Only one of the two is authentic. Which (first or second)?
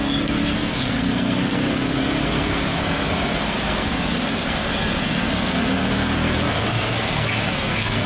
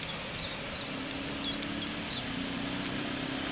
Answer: second